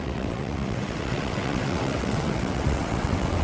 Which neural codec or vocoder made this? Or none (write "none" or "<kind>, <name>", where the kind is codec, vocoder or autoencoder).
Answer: vocoder, WaveNeXt